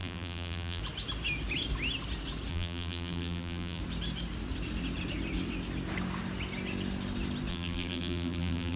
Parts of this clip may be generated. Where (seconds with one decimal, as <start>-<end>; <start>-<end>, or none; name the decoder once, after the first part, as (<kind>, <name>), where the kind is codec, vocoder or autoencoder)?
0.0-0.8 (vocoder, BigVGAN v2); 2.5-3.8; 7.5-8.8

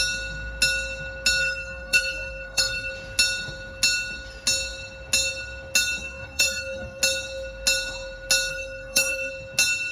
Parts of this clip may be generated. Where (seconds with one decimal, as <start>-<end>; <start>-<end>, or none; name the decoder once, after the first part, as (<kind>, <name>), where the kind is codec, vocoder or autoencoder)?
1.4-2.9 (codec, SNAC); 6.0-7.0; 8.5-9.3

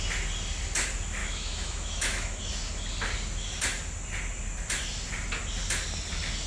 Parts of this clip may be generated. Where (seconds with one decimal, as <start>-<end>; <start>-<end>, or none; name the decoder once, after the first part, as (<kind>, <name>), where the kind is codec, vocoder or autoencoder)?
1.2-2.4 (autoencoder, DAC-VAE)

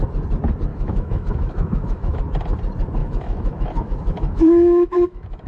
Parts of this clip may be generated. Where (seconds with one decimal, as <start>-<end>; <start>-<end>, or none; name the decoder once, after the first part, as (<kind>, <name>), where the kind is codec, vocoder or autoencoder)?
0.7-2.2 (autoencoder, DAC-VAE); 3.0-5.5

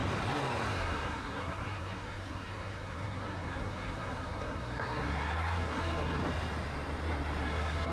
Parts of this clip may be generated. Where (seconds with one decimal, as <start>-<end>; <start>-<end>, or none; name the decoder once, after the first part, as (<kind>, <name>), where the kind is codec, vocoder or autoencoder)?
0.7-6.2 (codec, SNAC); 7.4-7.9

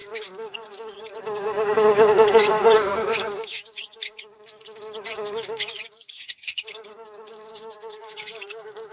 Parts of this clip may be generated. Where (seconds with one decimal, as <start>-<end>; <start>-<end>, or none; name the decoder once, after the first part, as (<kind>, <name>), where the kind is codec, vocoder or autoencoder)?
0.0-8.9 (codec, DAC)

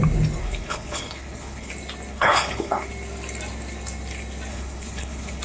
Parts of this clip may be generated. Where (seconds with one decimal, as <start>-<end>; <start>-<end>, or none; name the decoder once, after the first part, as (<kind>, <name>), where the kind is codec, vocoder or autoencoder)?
0.4-1.7 (codec, HILCodec); 2.1-2.9; 4.5-5.4